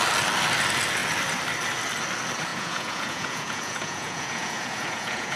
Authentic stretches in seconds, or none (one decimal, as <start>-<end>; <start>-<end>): 0.0-2.5